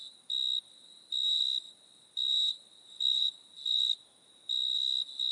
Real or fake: real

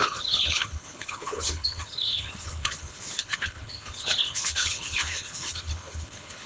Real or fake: fake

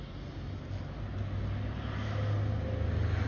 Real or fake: real